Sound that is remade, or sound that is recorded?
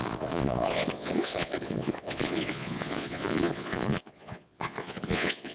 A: remade